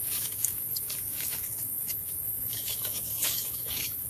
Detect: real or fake fake